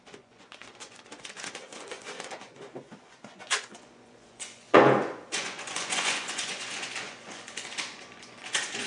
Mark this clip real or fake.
fake